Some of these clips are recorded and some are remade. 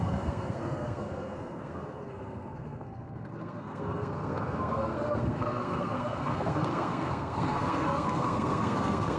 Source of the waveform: remade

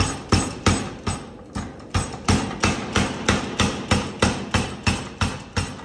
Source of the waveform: recorded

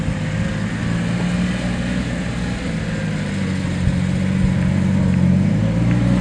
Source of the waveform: recorded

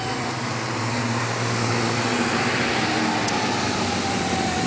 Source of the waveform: recorded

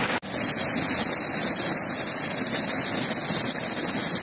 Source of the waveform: recorded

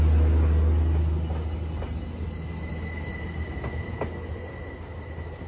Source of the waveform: recorded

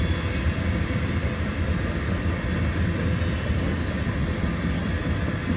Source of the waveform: recorded